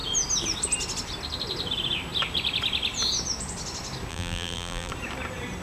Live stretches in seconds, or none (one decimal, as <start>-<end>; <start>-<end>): 0.0-4.1; 4.9-5.6